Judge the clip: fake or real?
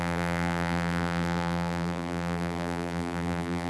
fake